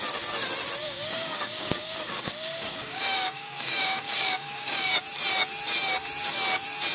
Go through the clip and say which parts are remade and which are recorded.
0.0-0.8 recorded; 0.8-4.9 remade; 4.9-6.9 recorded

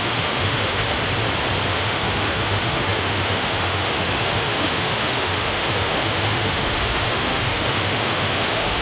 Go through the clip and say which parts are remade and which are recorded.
0.0-1.0 remade; 1.0-1.7 recorded; 1.7-8.8 remade

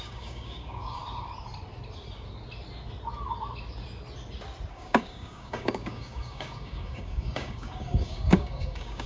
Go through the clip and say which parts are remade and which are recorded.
0.0-1.0 remade; 1.0-4.7 recorded; 4.7-9.1 remade

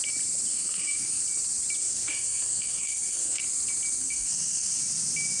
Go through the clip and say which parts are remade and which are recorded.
0.0-0.5 recorded; 0.5-1.2 remade; 1.2-1.8 recorded; 1.8-3.4 remade; 3.4-4.0 recorded; 4.0-4.8 remade; 4.8-5.4 recorded

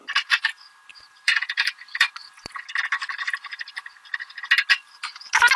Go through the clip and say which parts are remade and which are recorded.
0.0-0.9 recorded; 0.9-2.1 remade; 2.1-3.0 recorded; 3.0-3.8 remade; 3.8-5.6 recorded

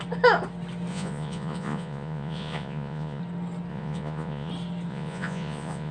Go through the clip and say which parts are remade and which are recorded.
0.0-0.9 recorded; 0.9-3.2 remade; 3.2-3.7 recorded; 3.7-4.5 remade; 4.5-4.9 recorded; 4.9-5.9 remade